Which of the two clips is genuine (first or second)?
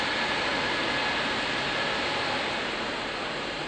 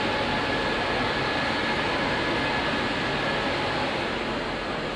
second